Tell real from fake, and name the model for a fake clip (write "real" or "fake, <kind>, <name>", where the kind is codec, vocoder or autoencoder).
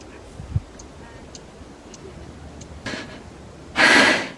real